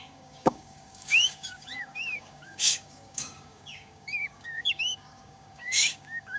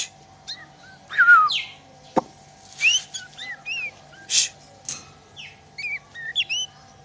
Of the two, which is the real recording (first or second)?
second